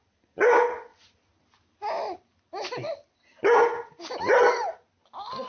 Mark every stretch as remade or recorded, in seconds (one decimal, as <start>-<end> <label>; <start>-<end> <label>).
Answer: 0.0-5.5 recorded